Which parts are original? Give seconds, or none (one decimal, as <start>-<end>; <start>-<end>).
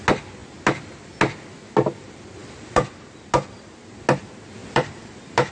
0.0-0.4; 1.1-2.4; 3.3-4.6